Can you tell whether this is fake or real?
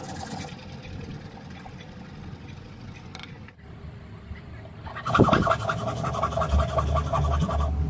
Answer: real